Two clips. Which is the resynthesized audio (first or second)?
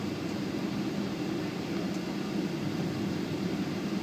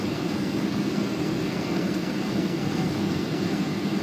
second